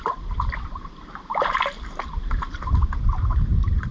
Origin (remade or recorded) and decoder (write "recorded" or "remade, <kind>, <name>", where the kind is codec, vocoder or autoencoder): remade, vocoder, BigVGAN v2